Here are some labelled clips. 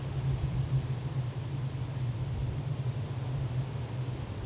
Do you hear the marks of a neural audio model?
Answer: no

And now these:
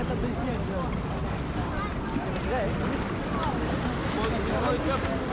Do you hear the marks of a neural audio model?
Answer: no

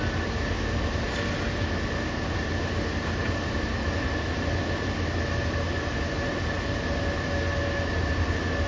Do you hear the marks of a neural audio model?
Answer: no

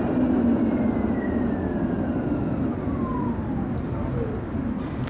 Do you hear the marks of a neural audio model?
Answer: no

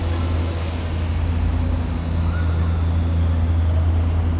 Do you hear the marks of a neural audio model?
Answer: no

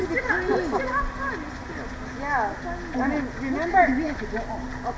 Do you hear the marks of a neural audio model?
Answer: no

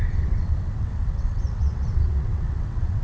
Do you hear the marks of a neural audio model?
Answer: yes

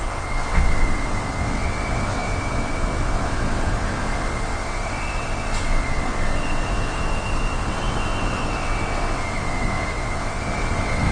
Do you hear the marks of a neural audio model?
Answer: yes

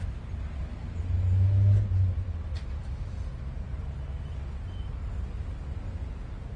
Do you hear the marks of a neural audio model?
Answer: no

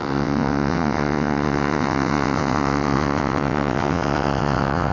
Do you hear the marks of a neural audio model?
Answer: yes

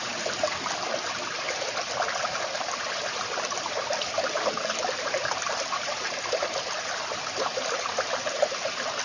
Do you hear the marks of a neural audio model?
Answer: no